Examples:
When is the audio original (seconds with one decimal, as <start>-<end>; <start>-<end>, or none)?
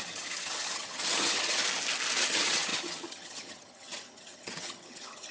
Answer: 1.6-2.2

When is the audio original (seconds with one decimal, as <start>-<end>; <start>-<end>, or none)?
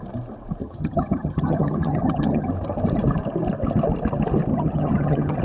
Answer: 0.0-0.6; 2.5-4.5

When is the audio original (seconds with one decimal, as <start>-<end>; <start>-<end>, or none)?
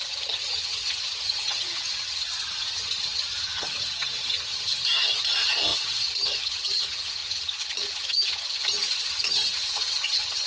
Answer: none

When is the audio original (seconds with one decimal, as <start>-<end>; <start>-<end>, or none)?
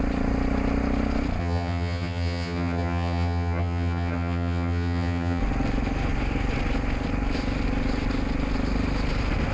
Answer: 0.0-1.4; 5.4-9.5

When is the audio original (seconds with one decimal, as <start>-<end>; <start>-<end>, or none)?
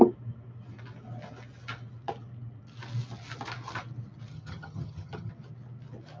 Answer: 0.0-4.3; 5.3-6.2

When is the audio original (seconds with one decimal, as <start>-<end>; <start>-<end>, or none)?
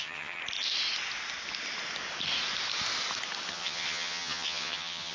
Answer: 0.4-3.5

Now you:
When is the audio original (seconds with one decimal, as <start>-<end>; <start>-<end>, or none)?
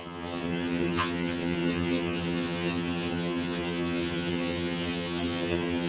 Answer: none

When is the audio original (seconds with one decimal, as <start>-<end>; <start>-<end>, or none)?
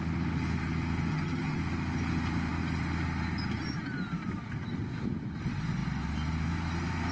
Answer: 0.0-1.1; 1.6-7.1